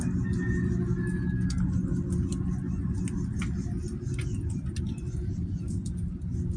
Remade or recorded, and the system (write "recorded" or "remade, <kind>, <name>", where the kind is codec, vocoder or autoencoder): recorded